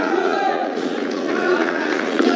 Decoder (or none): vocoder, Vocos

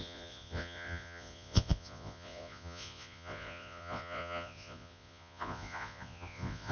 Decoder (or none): vocoder, Vocos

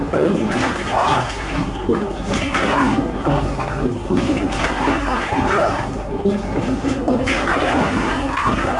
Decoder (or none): codec, SNAC